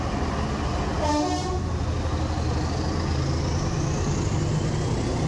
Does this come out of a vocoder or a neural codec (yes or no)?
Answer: no